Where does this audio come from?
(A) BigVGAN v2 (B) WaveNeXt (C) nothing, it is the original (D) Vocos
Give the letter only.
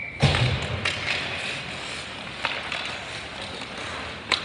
C